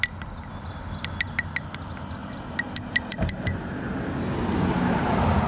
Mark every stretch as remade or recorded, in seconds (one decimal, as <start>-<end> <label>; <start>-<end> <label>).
0.0-5.5 recorded